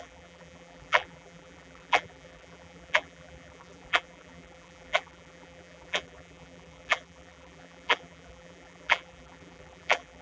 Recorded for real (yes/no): no